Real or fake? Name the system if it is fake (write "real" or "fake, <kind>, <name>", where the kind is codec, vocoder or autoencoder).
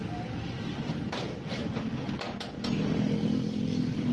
real